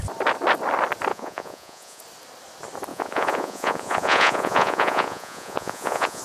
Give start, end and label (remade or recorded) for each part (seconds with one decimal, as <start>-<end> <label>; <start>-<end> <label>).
0.0-1.1 recorded; 1.1-2.0 remade; 2.0-2.9 recorded; 2.9-6.2 remade